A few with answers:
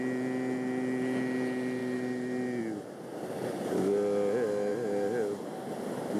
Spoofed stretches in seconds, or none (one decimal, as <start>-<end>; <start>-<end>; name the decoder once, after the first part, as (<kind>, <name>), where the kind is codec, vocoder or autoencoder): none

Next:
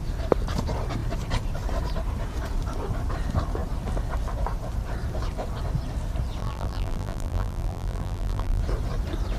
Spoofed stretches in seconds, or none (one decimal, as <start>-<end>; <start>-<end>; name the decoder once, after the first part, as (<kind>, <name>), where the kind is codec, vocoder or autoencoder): 6.4-8.6 (vocoder, BigVGAN v2)

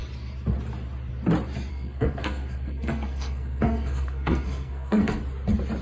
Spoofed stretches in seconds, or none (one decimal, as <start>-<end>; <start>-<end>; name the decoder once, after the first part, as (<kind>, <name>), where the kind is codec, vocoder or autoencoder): 1.7-5.2 (codec, SNAC)

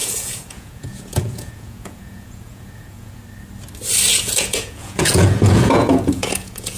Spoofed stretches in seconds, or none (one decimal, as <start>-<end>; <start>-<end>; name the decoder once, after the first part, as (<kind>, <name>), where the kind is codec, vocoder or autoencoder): 0.0-3.2 (vocoder, Vocos); 4.1-6.8